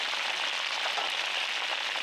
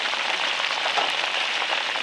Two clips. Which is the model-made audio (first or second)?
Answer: second